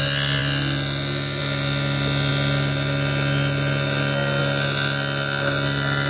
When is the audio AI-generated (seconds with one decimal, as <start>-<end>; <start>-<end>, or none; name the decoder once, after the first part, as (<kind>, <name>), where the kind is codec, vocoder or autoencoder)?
none